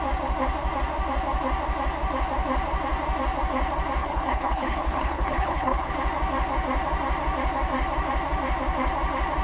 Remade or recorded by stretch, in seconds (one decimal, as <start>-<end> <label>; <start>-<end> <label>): 0.0-4.0 recorded; 4.0-5.9 remade; 5.9-9.4 recorded

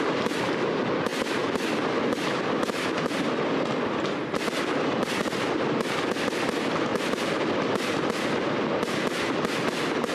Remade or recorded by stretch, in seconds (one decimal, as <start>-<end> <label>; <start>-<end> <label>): 0.0-6.9 recorded; 6.9-7.5 remade; 7.5-10.1 recorded

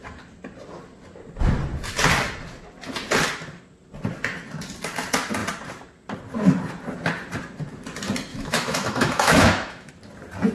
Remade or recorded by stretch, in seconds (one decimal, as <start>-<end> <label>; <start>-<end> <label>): 0.0-8.3 recorded; 8.3-9.9 remade; 9.9-10.5 recorded